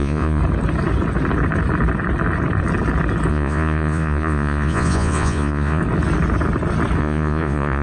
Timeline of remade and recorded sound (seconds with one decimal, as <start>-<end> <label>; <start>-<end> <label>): 0.0-0.4 remade; 0.4-3.3 recorded; 3.3-5.8 remade; 5.8-7.0 recorded; 7.0-7.8 remade